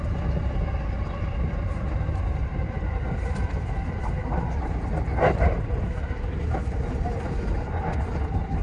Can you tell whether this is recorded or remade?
recorded